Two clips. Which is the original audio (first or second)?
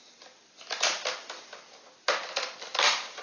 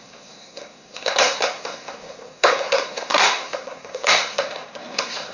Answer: first